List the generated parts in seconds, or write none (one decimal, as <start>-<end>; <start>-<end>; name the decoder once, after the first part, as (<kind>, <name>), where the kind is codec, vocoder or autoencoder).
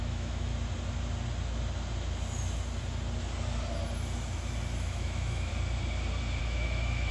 0.0-0.5 (autoencoder, DAC-VAE); 4.8-5.5; 6.4-7.1